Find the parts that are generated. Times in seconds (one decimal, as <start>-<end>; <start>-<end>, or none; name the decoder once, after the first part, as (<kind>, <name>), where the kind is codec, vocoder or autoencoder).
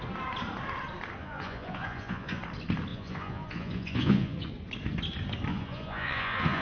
1.2-2.4 (vocoder, Vocos); 2.9-4.5; 5.5-6.6